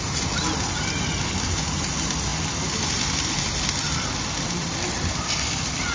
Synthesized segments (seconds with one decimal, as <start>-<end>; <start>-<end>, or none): none